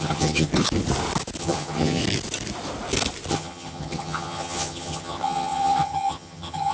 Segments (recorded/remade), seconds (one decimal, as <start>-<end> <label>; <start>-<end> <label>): 0.0-0.5 remade; 0.5-1.4 recorded; 1.4-2.0 remade; 2.0-3.3 recorded; 3.3-6.7 remade